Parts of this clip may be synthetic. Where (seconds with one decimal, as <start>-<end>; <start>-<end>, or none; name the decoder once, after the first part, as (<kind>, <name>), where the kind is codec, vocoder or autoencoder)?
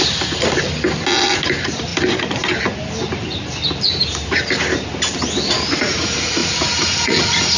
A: 6.4-7.6 (vocoder, Vocos)